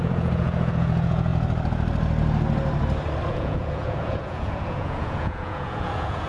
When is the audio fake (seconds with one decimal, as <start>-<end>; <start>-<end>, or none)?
0.0-1.3; 3.3-6.3